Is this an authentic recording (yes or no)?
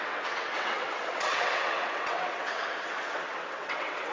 no